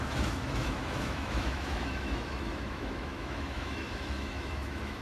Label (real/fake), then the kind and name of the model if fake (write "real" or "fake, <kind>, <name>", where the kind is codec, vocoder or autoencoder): fake, autoencoder, DAC-VAE